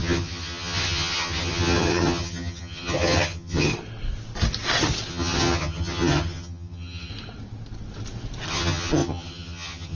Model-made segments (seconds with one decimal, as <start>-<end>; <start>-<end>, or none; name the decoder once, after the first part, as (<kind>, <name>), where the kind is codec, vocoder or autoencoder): 0.0-3.7 (vocoder, HiFi-GAN); 5.1-7.1; 8.5-9.9